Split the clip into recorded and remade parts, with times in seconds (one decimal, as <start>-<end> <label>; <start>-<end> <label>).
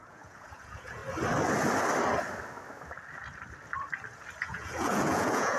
0.0-1.0 remade; 1.0-4.4 recorded; 4.4-5.6 remade